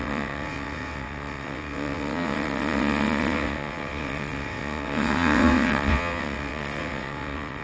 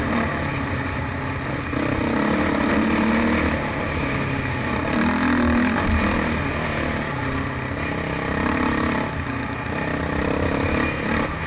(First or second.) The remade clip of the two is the first